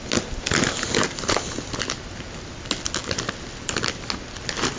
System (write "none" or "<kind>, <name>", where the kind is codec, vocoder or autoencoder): none